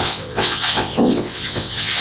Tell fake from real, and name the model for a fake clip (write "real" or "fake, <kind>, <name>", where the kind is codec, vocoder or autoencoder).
fake, vocoder, WaveNeXt